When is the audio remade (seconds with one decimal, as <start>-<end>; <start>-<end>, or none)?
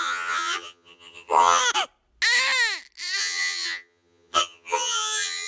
0.0-1.6; 3.2-5.5